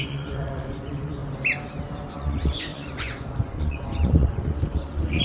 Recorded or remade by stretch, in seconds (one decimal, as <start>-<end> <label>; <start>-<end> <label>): 0.0-1.2 remade; 1.2-2.1 recorded; 2.1-5.2 remade